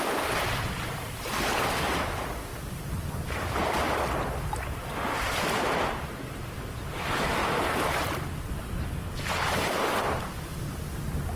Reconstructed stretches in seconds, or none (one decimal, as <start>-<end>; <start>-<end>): none